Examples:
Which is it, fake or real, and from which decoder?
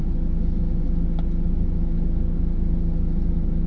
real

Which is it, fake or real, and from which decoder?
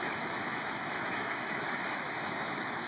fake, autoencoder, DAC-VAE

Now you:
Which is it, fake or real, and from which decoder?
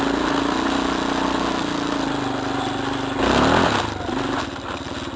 real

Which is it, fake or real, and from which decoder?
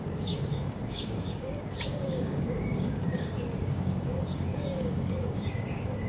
fake, codec, DAC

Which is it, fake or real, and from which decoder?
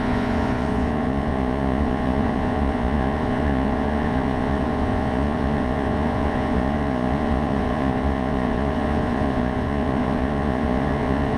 fake, vocoder, Vocos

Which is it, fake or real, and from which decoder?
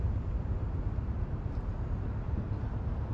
real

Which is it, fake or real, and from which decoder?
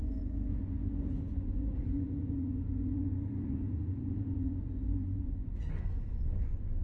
fake, vocoder, Vocos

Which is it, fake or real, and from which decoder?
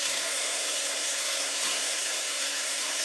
fake, codec, SNAC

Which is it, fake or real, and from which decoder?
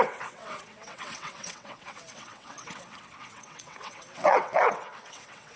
fake, vocoder, WaveNeXt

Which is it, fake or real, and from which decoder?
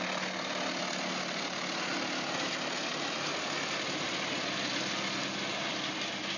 real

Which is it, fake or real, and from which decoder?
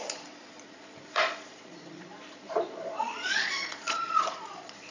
fake, vocoder, Vocos